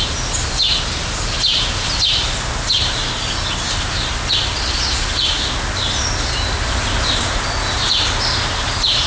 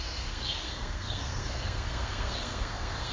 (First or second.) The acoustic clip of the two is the first